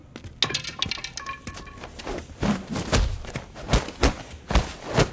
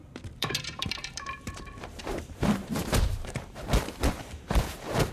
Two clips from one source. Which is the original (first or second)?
first